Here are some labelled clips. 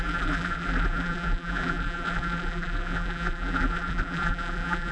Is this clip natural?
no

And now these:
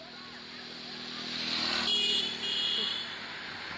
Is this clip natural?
yes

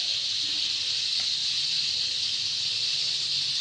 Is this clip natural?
no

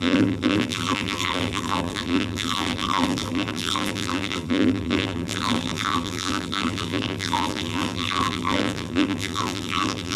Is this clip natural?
no